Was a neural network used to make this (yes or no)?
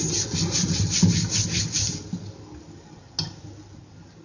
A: no